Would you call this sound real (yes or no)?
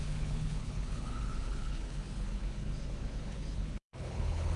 no